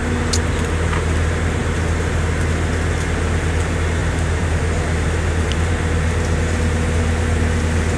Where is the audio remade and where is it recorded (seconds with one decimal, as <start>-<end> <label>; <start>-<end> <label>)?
0.0-4.0 recorded; 4.0-5.7 remade; 5.7-8.0 recorded